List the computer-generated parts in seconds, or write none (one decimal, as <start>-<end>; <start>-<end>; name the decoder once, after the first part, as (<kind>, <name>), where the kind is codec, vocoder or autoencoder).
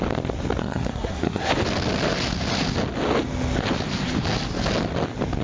0.6-1.5 (codec, SNAC)